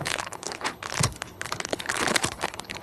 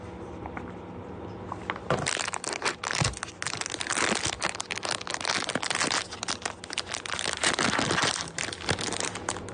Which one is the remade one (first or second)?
first